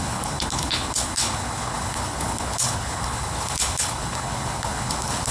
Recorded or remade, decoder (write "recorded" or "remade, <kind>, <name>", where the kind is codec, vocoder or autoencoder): remade, codec, HILCodec